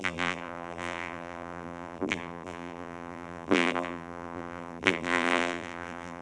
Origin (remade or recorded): remade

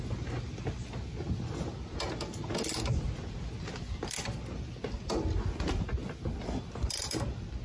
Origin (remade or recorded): recorded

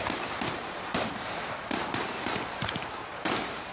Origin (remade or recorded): remade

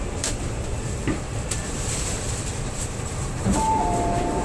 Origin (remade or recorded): remade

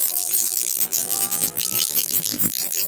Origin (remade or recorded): remade